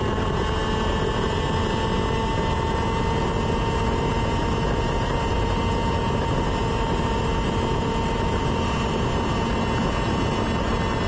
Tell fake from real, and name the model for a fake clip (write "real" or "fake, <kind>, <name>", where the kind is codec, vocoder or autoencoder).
real